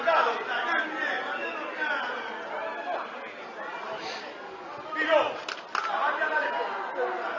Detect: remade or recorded recorded